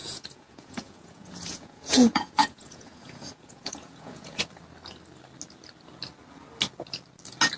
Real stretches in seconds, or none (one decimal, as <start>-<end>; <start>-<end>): 4.4-7.6